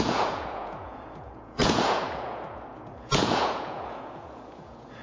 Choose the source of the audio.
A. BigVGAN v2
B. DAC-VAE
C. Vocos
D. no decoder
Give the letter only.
C